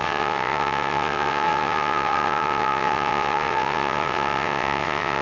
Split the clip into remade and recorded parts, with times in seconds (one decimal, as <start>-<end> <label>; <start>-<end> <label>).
0.0-5.2 remade